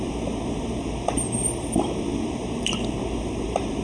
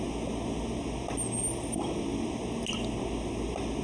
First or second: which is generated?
first